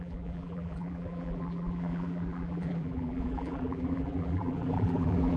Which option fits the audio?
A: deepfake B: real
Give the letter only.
A